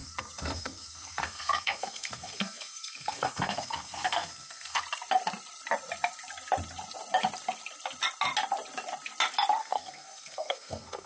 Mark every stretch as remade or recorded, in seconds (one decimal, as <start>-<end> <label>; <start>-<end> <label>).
0.0-4.8 remade; 4.8-9.6 recorded; 9.6-11.1 remade